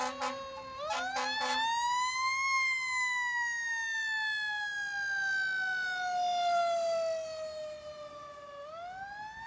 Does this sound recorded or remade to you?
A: recorded